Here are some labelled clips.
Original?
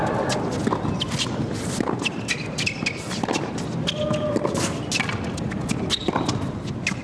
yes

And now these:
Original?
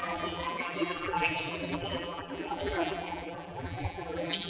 no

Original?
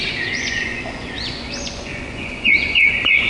no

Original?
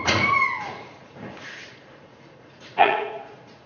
no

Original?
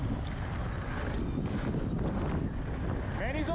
yes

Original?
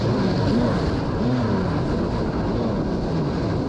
yes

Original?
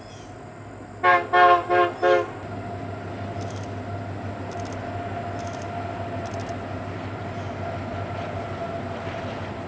yes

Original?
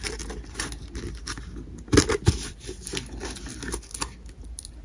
yes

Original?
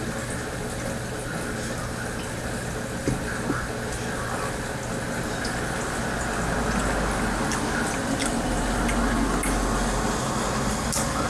yes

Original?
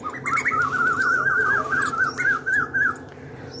yes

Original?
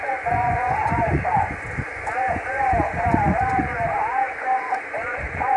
no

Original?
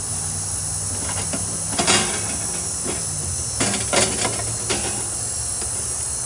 yes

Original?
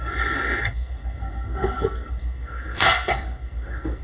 no